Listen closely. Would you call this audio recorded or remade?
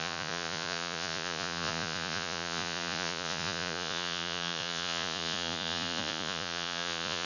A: remade